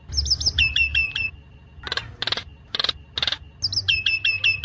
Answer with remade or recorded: recorded